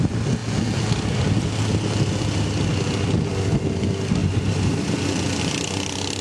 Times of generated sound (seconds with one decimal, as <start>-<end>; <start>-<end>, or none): none